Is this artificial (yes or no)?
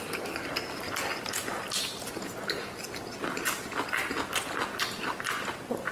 no